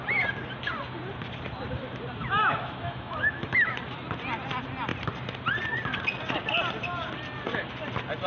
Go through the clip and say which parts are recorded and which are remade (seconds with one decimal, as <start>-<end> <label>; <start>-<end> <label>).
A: 0.0-2.2 recorded; 2.2-3.7 remade; 3.7-8.3 recorded